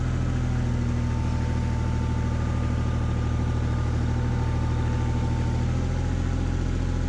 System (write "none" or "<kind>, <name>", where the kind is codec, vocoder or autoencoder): none